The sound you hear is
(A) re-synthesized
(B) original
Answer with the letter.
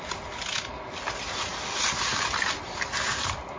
B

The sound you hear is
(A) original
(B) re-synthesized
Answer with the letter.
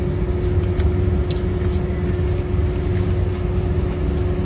A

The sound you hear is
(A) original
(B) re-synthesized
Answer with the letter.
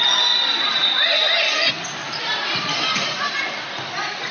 A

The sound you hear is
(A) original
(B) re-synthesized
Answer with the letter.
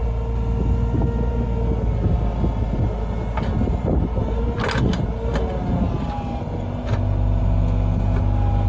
A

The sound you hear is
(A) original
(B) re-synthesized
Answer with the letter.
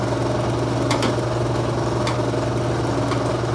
A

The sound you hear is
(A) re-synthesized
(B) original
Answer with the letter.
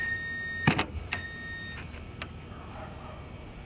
B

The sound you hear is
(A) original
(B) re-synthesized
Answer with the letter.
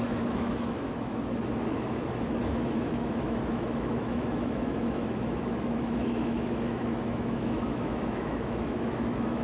B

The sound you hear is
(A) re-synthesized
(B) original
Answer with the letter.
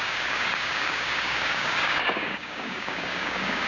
A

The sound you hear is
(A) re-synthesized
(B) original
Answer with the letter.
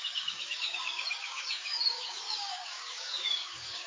A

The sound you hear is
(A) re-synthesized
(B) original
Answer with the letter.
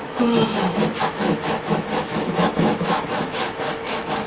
A